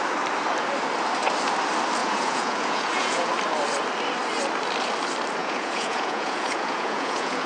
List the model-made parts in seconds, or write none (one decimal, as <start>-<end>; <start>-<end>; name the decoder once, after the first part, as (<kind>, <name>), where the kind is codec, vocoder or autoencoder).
2.0-3.3 (vocoder, Vocos); 5.4-7.5